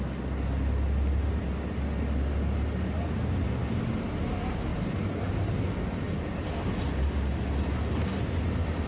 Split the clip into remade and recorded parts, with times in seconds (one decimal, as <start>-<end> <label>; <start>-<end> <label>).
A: 0.0-4.7 recorded; 4.7-5.5 remade; 5.5-8.9 recorded